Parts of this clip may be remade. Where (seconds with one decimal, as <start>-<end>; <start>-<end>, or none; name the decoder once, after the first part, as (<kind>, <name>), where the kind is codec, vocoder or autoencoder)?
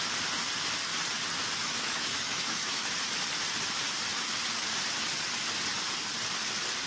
1.6-2.9 (autoencoder, DAC-VAE)